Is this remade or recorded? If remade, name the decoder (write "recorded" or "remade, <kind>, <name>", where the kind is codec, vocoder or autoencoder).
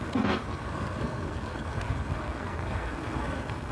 remade, codec, SNAC